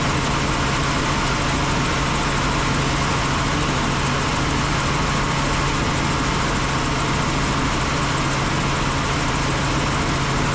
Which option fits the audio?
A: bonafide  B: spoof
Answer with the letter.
A